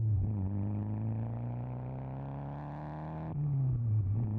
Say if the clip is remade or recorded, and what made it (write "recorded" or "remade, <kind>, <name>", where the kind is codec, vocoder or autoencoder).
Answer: remade, vocoder, BigVGAN v2